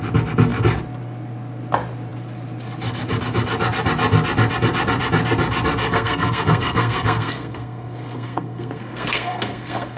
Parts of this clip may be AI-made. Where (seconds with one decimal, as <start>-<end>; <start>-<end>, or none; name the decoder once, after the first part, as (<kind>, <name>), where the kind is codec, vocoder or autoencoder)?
5.9-10.0 (codec, SNAC)